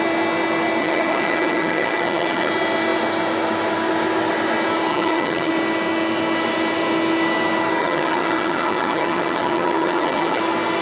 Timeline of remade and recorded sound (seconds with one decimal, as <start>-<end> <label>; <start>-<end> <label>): 0.0-0.8 recorded; 0.8-2.5 remade; 2.5-4.9 recorded; 4.9-5.5 remade; 5.5-7.8 recorded; 7.8-10.4 remade; 10.4-10.8 recorded